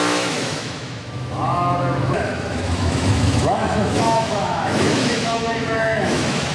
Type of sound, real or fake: fake